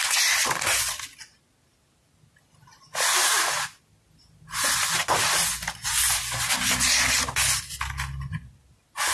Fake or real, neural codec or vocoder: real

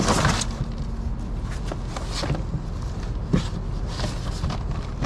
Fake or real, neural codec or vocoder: real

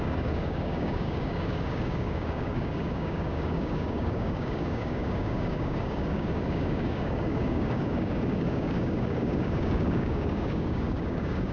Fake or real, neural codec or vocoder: fake, codec, DAC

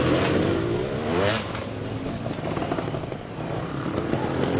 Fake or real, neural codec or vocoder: real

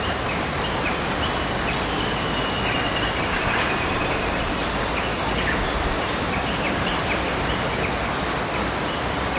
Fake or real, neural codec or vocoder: real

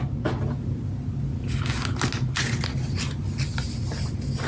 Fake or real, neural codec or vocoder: real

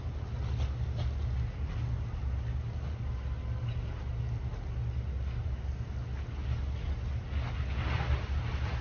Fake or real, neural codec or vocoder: real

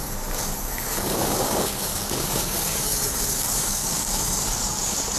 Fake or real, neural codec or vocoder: fake, codec, DAC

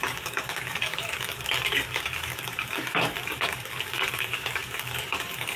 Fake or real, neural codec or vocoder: fake, codec, DAC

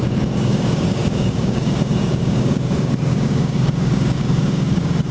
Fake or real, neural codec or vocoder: fake, codec, DAC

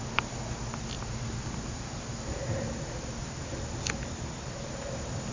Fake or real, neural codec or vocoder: real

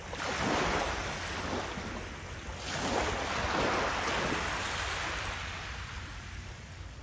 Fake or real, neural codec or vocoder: real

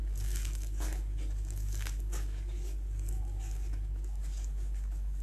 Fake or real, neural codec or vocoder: fake, codec, DAC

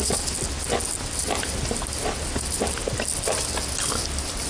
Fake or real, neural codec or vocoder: real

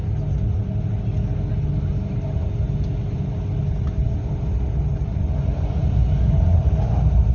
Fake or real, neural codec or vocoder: real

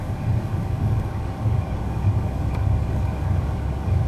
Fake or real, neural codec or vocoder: fake, codec, DAC